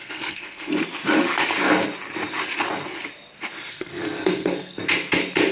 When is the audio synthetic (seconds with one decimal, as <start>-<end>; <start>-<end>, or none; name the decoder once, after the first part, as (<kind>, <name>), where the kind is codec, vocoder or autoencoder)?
0.0-0.7 (codec, SNAC); 3.7-4.8

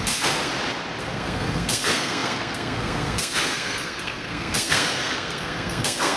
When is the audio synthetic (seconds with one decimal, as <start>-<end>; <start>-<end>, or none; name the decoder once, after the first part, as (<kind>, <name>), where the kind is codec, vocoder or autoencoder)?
0.0-0.5 (codec, SNAC); 1.0-6.2

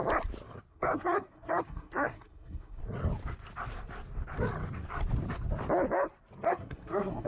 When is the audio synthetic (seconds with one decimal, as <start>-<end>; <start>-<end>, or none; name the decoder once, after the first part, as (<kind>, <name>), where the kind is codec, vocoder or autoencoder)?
0.7-2.8 (codec, SNAC); 6.5-7.3

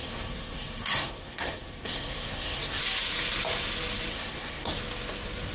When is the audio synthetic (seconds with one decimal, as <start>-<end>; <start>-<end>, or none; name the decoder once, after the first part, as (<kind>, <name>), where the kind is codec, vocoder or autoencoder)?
0.0-2.8 (codec, SNAC); 4.1-4.7

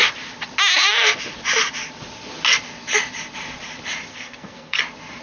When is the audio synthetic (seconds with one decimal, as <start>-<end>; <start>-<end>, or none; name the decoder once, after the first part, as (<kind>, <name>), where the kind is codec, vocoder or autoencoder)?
4.1-4.8 (codec, SNAC)

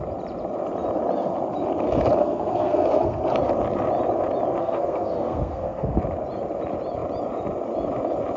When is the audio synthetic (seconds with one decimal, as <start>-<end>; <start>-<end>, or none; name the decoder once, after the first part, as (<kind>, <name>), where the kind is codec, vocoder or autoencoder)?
2.2-3.2 (codec, SNAC); 4.6-6.0

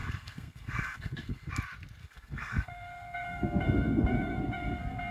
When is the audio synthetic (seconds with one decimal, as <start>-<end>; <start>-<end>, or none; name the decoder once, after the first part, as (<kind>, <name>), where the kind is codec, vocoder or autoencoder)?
0.0-1.5 (codec, SNAC); 2.0-5.1